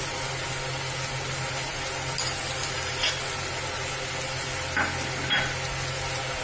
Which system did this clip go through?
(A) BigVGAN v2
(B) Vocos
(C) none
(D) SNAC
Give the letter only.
C